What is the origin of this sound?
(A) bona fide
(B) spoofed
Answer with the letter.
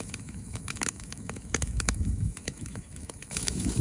B